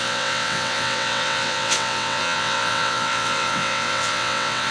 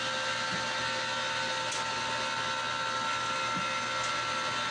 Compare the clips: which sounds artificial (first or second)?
first